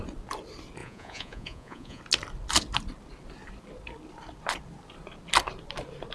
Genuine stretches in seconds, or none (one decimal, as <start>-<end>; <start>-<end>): 0.0-0.8; 2.0-6.1